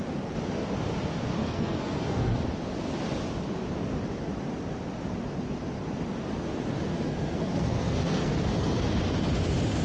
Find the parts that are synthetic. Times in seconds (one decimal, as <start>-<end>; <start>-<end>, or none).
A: 1.4-2.4; 6.9-8.8